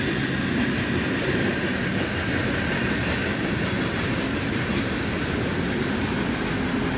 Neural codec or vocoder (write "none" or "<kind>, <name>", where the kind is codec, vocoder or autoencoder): none